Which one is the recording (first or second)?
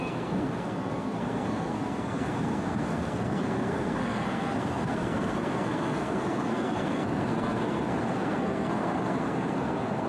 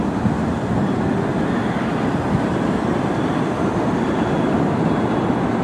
second